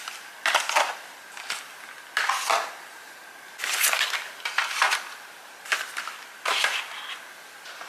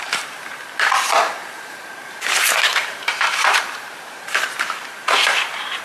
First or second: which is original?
first